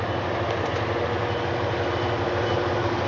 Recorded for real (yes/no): yes